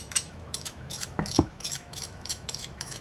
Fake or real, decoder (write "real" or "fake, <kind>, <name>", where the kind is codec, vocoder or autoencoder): fake, autoencoder, DAC-VAE